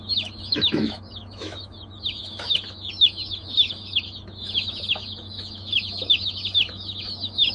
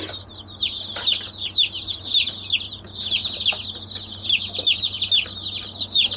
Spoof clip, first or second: first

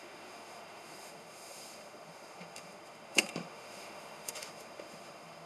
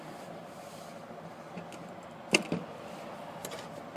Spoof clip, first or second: first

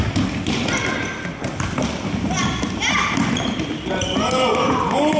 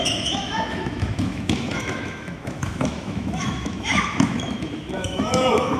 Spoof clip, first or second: second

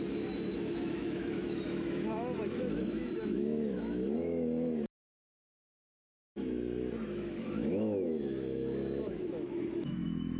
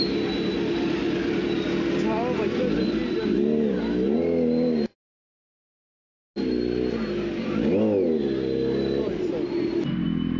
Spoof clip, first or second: first